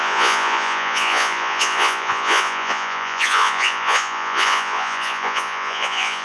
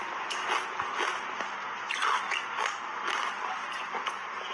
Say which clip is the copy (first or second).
first